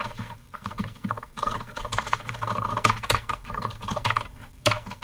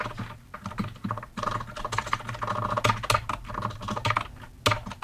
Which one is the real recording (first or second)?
second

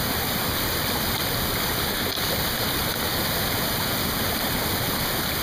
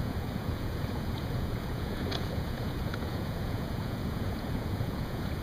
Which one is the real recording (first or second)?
first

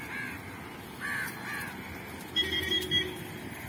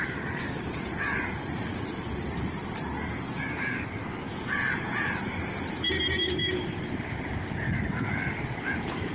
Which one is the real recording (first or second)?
first